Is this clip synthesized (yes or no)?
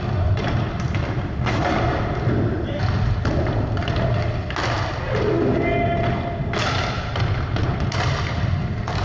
no